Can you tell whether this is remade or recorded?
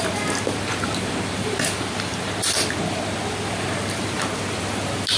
recorded